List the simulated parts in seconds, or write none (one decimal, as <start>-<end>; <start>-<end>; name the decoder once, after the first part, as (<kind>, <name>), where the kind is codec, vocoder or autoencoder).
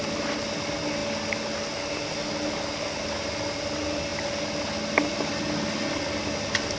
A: none